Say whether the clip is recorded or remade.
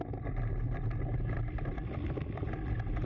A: remade